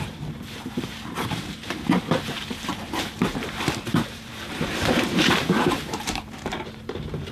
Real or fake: fake